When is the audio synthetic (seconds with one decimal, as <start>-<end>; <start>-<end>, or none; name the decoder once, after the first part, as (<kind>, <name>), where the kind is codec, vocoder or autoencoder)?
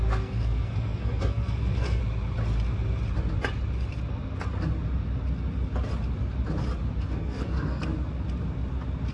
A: 0.0-2.0 (codec, SNAC); 7.0-7.8